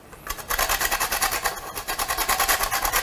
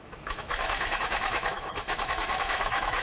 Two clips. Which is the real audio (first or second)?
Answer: first